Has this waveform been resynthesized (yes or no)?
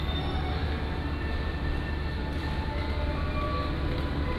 no